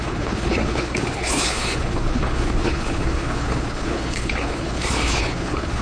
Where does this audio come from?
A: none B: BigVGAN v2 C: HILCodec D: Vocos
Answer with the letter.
C